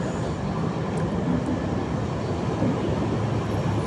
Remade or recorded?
recorded